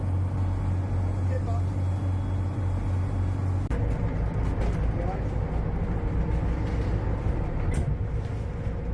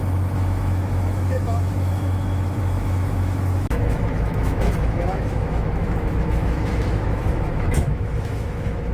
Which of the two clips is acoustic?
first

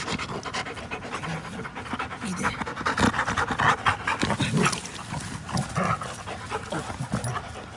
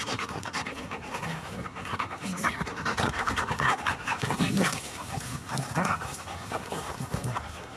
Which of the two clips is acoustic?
first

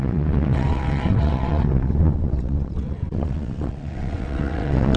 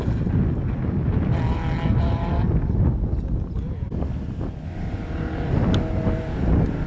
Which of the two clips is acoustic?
second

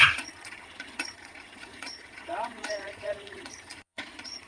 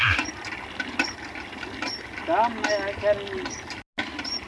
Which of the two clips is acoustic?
second